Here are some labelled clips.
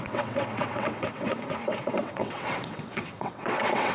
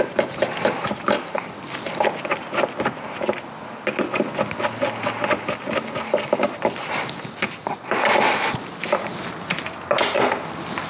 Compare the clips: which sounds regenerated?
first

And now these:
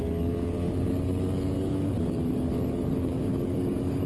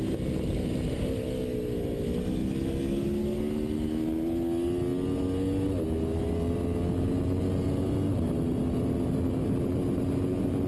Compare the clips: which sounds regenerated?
first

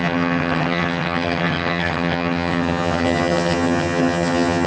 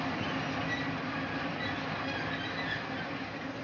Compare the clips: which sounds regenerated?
first